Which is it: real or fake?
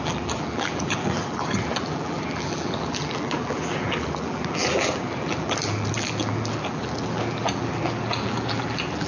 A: fake